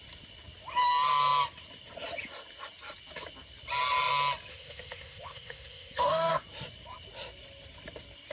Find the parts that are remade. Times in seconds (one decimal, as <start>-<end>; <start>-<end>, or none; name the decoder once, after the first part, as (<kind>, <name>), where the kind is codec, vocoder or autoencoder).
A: 4.5-6.3 (autoencoder, DAC-VAE)